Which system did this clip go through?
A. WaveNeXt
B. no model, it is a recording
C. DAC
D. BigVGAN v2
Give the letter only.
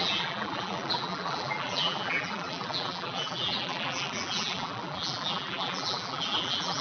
D